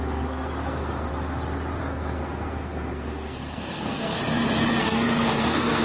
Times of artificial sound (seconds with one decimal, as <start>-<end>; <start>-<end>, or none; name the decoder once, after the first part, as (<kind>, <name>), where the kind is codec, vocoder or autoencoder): 0.0-1.1 (codec, SNAC); 1.8-4.2; 4.8-5.8

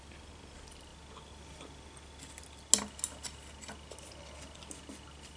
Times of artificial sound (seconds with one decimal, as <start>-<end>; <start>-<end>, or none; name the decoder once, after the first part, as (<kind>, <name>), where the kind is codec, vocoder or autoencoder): none

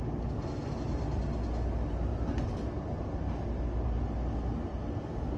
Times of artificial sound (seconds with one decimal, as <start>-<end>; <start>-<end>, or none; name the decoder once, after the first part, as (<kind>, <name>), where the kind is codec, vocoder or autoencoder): none

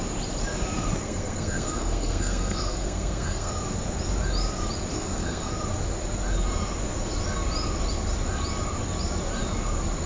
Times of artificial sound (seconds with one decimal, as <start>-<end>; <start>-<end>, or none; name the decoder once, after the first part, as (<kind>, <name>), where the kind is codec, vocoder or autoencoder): 1.0-3.5 (codec, SNAC); 4.9-5.5

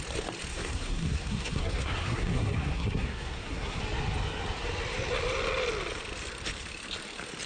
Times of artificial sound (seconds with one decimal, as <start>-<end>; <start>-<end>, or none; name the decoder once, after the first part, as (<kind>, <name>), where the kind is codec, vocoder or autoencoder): 0.5-3.8 (codec, SNAC)